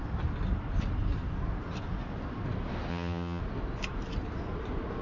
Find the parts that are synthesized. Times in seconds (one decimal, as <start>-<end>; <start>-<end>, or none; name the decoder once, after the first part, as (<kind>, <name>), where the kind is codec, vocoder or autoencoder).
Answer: 2.9-3.4 (vocoder, HiFi-GAN)